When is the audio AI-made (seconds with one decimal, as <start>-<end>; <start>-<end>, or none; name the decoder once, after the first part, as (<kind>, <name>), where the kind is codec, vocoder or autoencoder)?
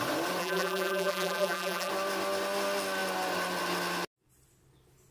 0.4-1.9 (vocoder, BigVGAN v2)